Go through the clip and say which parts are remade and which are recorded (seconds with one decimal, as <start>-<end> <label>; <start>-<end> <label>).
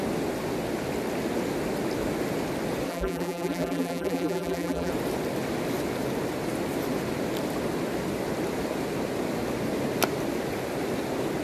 0.0-2.9 recorded; 2.9-4.9 remade; 4.9-11.4 recorded